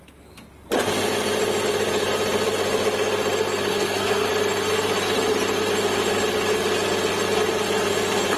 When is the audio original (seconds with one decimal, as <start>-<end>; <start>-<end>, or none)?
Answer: 0.0-3.7; 4.3-8.4